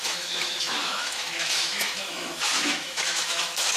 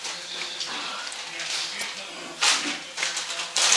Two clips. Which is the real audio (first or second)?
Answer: second